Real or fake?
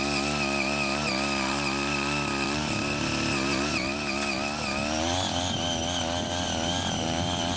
real